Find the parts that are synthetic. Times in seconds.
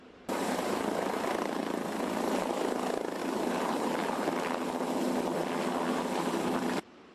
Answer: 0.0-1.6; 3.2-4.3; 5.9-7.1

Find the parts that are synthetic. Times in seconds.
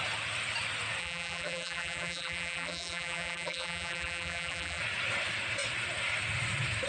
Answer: 1.0-4.8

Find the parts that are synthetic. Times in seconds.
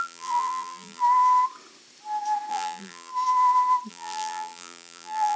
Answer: 0.0-1.0; 2.5-3.1; 3.9-5.4